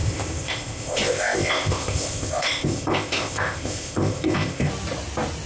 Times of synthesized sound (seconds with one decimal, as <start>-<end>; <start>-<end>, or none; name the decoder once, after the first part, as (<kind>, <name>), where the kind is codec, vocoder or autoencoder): 0.0-4.7 (codec, ZipCodec)

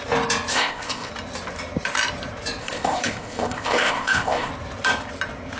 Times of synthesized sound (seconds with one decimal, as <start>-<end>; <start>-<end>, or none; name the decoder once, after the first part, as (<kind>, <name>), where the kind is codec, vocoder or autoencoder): 0.5-1.1 (codec, ZipCodec); 2.6-4.5

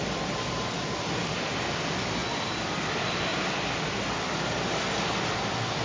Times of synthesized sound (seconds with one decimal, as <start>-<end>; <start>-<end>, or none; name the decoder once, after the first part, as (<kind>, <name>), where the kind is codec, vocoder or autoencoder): none